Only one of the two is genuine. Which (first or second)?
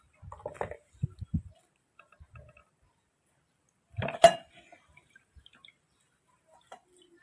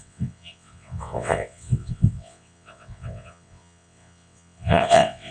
first